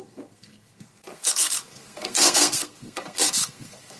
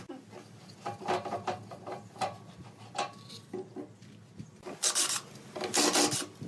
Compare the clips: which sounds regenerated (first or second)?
first